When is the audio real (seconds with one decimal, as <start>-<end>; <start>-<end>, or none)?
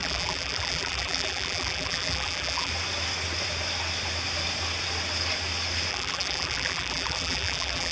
2.7-5.9